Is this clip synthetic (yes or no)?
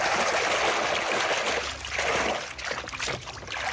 no